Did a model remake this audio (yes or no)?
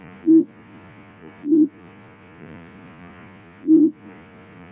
yes